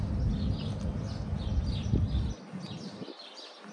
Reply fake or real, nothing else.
real